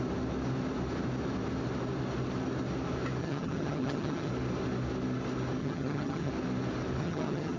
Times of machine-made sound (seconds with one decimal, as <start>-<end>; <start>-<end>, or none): 3.2-4.3; 5.6-6.3; 7.0-7.6